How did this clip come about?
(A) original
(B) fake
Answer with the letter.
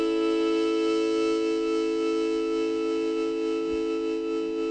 A